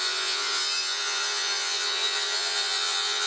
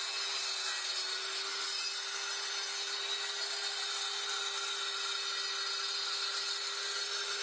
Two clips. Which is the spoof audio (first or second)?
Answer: first